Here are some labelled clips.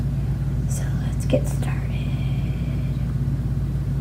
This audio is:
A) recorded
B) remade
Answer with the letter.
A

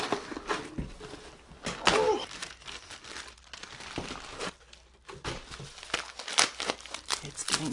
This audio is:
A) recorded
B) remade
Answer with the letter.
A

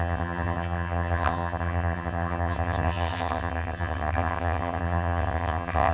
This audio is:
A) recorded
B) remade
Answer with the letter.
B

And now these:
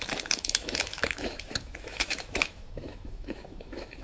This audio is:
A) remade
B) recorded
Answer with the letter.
A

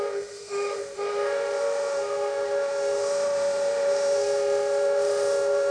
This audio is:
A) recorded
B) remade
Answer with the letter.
B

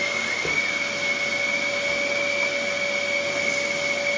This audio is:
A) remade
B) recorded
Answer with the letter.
B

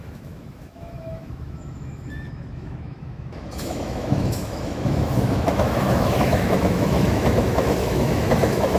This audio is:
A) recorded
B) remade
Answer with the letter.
B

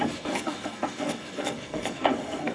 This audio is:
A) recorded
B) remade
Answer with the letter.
B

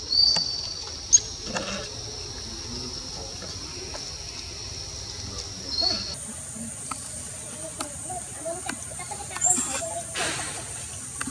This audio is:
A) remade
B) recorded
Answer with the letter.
B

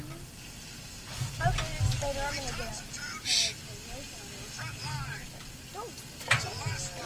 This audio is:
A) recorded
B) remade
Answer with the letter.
A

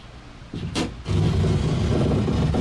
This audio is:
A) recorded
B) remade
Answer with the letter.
A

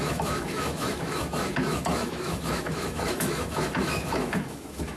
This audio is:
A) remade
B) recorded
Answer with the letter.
A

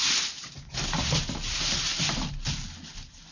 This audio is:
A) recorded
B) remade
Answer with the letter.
A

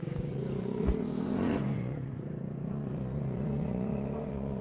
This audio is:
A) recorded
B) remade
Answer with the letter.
B